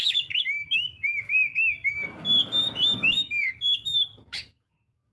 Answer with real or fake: fake